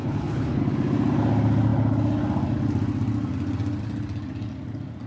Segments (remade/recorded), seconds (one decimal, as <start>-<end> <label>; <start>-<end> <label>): 0.0-0.6 remade; 0.6-5.1 recorded